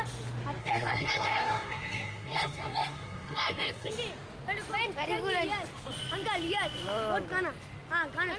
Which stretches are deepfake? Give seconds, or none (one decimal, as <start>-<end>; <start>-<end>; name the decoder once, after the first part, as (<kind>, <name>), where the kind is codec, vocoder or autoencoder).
0.6-3.9 (codec, SNAC)